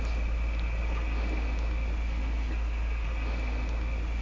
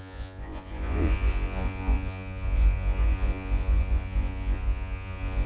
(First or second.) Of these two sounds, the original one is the first